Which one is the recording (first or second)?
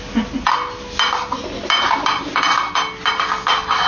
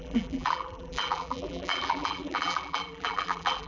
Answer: first